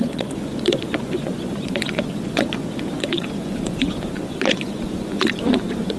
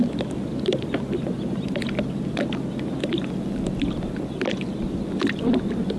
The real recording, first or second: second